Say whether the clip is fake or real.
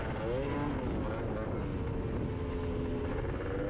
real